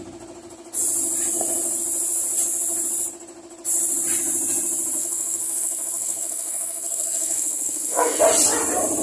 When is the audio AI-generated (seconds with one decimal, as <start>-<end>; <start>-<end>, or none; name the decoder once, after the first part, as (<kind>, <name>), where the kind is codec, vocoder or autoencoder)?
5.0-8.2 (codec, SNAC)